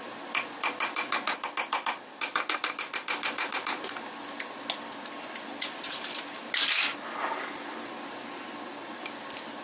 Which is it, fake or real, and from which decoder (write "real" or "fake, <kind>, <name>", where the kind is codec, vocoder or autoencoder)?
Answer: real